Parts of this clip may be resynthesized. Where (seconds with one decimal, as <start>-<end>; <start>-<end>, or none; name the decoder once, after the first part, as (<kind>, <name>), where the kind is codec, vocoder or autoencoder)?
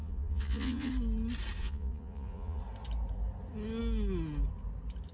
0.0-0.9 (vocoder, Vocos); 1.6-2.6